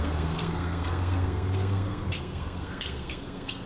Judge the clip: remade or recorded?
remade